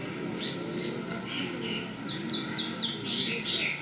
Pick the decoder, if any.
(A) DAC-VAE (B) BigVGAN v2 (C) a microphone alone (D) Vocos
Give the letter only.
C